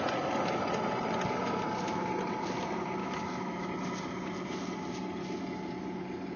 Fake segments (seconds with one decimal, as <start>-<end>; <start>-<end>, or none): 3.0-3.7